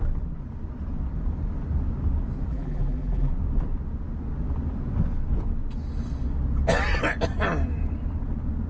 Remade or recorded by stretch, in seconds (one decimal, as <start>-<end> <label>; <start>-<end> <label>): 0.0-2.5 recorded; 2.5-3.3 remade; 3.3-8.7 recorded